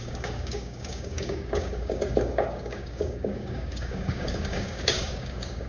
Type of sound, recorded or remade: remade